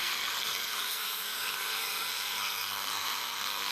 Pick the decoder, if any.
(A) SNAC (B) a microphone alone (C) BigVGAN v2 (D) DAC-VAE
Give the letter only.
A